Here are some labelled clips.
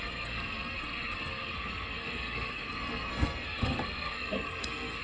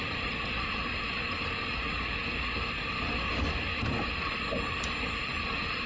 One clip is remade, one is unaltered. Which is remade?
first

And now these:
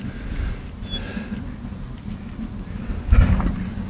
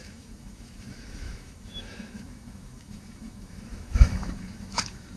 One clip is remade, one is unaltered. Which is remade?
second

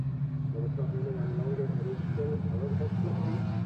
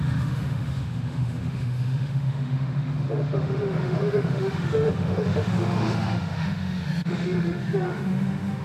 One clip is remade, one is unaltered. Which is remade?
second